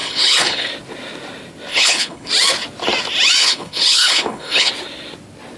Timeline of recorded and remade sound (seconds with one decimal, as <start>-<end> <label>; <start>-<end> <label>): 0.0-0.7 remade; 0.7-1.7 recorded; 1.7-2.3 remade; 2.3-3.4 recorded; 3.4-4.7 remade; 4.7-5.6 recorded